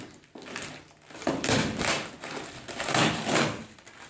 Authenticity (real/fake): real